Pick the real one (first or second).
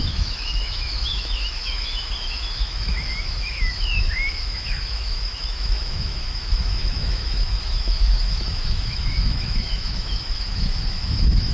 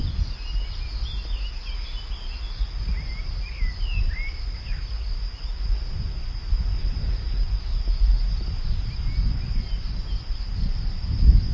second